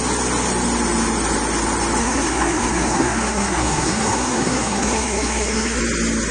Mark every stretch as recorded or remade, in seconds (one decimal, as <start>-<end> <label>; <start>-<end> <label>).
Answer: 0.0-2.0 recorded; 2.0-5.8 remade; 5.8-6.3 recorded